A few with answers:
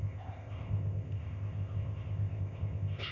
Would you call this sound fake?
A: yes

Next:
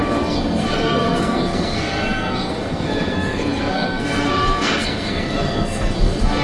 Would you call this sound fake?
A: yes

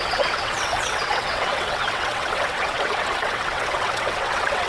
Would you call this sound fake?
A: yes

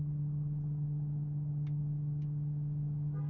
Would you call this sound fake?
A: no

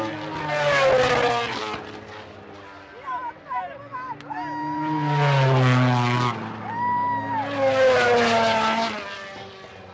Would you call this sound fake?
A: no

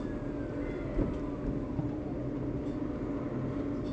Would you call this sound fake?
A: no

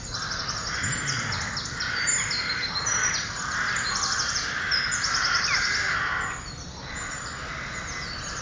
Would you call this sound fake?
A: yes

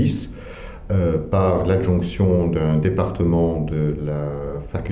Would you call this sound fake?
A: no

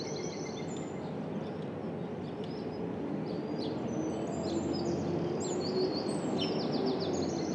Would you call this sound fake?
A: no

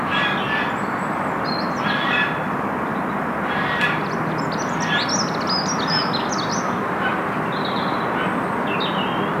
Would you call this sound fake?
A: no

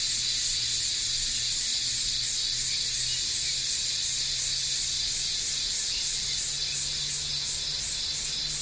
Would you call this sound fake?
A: no